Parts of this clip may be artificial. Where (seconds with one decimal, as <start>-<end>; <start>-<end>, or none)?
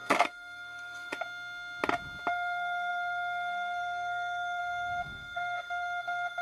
0.0-1.1; 2.3-6.4